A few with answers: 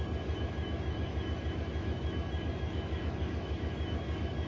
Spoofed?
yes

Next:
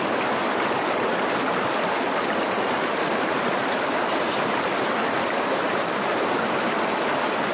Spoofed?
no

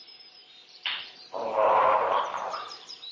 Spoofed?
yes